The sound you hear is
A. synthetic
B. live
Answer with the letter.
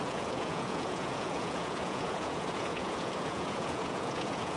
A